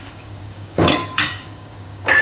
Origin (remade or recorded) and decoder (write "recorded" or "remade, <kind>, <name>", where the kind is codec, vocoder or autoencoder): remade, codec, DAC